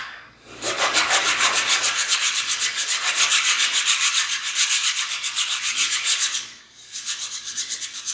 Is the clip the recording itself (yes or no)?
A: no